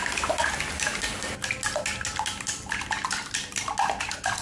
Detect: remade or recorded recorded